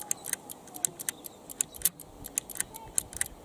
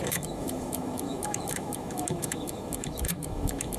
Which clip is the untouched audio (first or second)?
first